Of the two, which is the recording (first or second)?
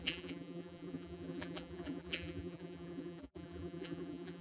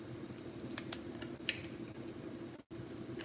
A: second